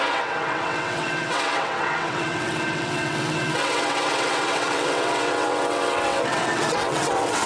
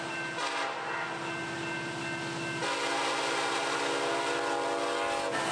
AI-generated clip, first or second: first